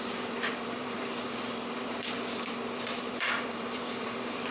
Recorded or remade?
remade